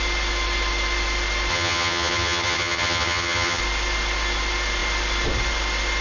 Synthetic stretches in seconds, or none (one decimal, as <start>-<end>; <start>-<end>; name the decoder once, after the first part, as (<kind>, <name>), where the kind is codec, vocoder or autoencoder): 1.5-3.6 (vocoder, HiFi-GAN)